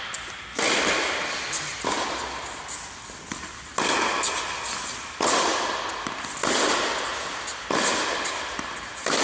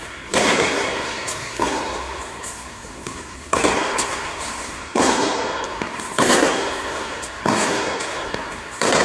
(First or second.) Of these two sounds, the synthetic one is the second